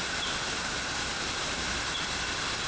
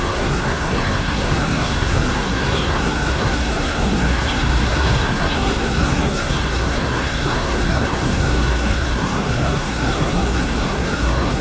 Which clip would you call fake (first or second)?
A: second